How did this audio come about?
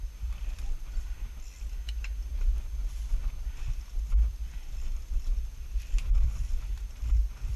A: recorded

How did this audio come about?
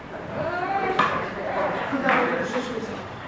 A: remade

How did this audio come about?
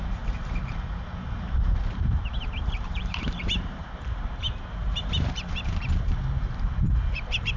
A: remade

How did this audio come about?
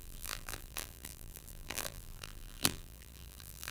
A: remade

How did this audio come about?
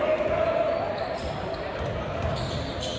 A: remade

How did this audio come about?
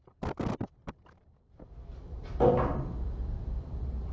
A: remade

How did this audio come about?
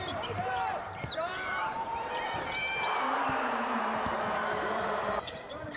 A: remade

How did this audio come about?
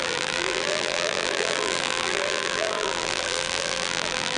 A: remade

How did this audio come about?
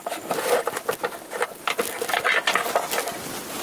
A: recorded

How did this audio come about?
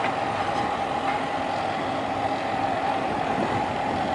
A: recorded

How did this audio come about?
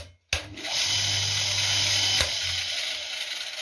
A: recorded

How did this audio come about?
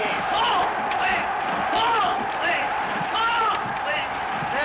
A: remade